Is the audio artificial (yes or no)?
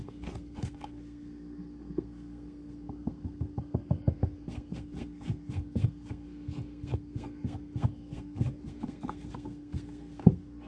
yes